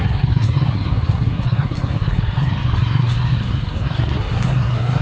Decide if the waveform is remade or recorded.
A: remade